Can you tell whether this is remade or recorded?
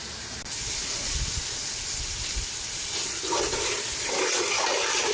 recorded